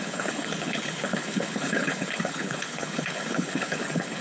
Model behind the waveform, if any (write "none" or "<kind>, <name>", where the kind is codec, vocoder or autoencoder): codec, HILCodec